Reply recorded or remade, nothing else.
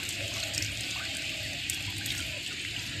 recorded